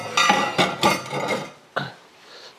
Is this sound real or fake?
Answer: real